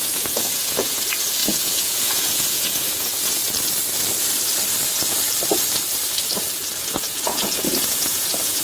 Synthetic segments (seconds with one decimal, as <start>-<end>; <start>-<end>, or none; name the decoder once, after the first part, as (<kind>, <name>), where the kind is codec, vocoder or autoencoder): 0.0-3.4 (vocoder, Vocos); 7.0-8.6